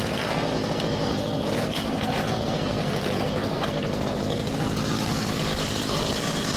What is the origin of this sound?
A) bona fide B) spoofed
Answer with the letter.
B